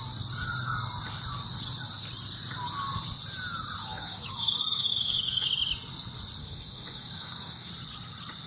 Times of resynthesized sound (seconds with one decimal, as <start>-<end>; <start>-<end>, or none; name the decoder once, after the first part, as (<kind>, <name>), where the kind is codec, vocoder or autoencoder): 3.8-5.5 (codec, DAC); 6.4-7.7